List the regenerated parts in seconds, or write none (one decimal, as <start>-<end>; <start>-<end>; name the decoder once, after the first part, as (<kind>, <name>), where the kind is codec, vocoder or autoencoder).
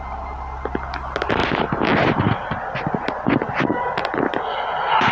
none